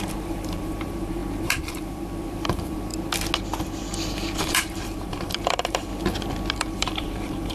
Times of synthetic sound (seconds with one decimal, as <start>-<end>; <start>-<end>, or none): 0.0-2.9; 4.4-5.9; 6.5-7.5